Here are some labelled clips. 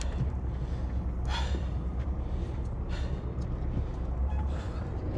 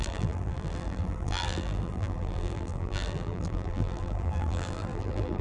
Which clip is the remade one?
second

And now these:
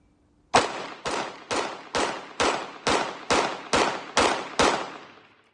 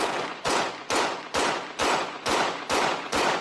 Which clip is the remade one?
second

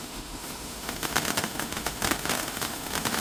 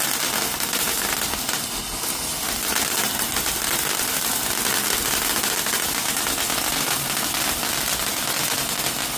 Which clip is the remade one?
first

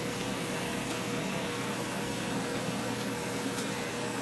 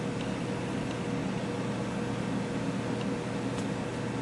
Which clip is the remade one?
first